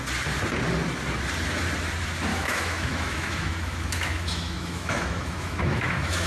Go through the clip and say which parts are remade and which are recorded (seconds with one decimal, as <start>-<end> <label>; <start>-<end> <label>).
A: 0.0-2.3 recorded; 2.3-6.3 remade